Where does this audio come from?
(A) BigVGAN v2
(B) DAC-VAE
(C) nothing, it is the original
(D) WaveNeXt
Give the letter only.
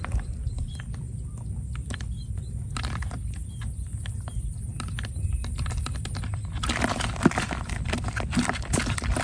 C